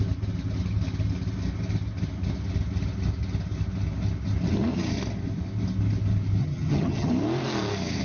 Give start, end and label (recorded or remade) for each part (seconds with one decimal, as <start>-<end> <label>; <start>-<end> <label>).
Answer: 0.0-6.4 recorded; 6.4-7.1 remade; 7.1-8.0 recorded